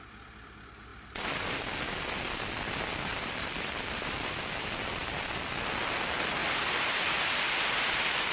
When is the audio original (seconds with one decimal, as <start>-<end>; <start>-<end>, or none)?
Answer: 0.0-0.9; 1.6-3.1; 4.4-6.4; 7.2-8.3